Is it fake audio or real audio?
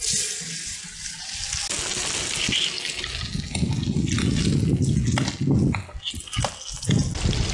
real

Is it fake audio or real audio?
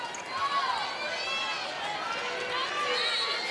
real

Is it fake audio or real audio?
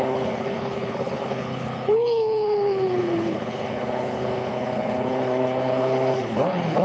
fake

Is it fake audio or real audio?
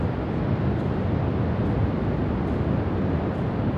real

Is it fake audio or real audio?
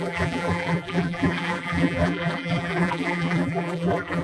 fake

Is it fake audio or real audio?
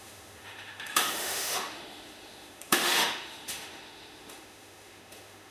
fake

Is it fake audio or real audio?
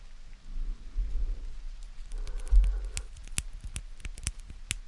real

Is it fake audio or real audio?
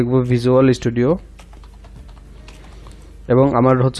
real